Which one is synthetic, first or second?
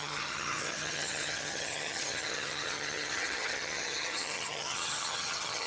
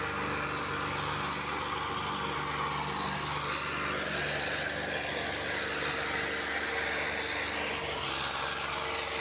first